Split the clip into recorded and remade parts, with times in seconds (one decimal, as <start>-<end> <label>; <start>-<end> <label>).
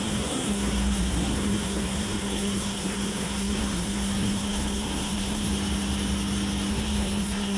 0.0-5.5 remade; 5.5-6.7 recorded; 6.7-7.6 remade